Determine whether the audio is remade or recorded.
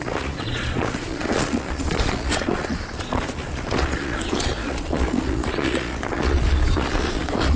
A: remade